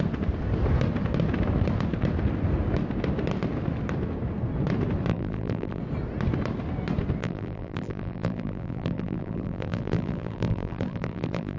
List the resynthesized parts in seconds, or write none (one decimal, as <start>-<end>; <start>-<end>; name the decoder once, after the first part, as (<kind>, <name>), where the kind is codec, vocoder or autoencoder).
5.1-5.8 (vocoder, BigVGAN v2); 7.2-11.6